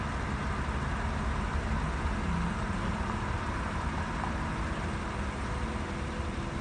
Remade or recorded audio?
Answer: recorded